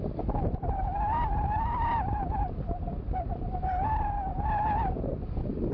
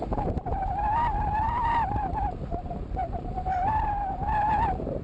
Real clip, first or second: first